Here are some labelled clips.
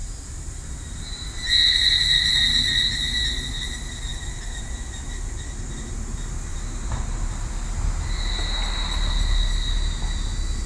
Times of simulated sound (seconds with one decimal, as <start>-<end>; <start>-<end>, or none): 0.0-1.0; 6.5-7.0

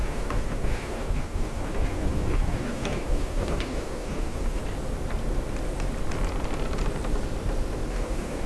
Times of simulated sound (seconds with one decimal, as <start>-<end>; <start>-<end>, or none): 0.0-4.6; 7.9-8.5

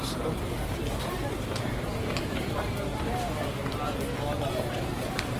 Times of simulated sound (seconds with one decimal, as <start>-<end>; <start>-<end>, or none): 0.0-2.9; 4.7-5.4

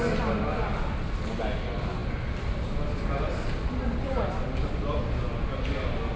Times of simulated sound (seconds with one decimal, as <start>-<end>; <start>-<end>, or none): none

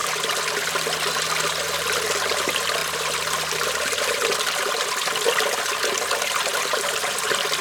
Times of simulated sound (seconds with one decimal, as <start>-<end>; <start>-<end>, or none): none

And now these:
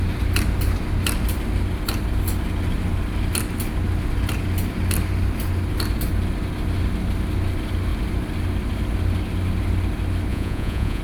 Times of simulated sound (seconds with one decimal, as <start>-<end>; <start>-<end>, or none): 10.3-11.0